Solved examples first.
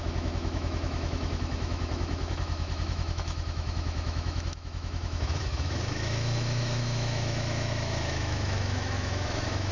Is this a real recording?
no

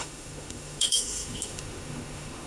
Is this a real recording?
no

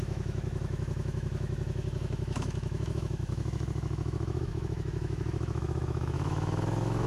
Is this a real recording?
no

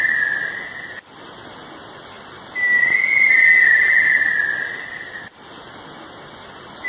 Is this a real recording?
yes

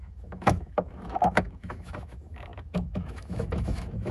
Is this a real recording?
no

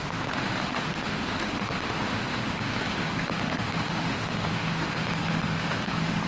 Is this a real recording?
no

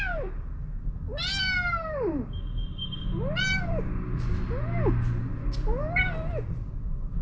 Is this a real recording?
yes